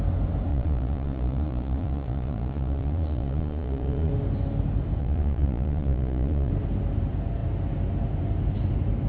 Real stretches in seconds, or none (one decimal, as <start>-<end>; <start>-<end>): 0.0-0.5; 4.1-5.0; 6.5-9.1